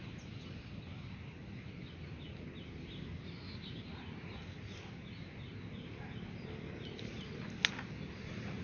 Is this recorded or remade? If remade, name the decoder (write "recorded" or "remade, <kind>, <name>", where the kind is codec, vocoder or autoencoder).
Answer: recorded